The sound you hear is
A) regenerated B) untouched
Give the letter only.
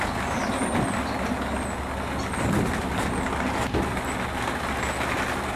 B